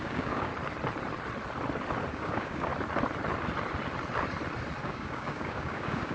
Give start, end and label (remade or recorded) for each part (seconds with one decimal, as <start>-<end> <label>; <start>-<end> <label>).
0.0-0.5 remade; 0.5-2.1 recorded; 2.1-2.7 remade; 2.7-4.8 recorded; 4.8-6.1 remade